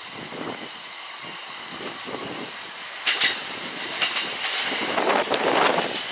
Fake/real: fake